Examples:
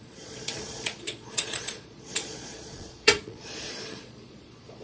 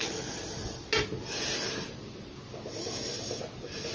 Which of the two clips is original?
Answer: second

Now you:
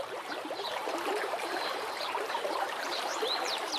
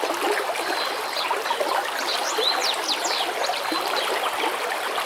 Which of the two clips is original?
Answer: second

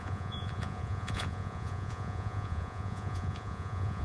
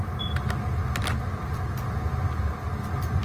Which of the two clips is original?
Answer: second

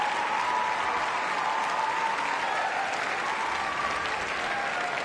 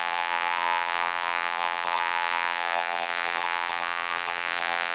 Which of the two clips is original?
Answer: first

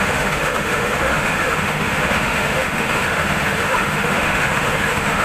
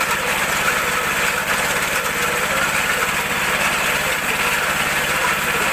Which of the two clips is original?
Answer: second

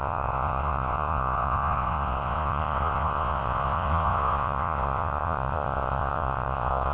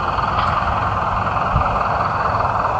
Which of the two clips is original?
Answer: second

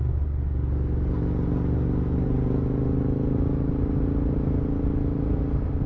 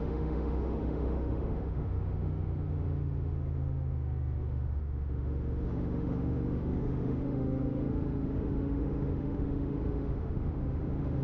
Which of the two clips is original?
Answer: first